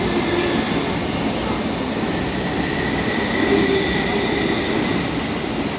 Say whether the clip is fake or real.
real